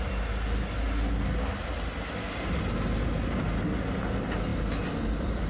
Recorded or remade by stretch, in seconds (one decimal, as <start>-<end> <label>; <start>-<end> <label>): 0.0-5.5 recorded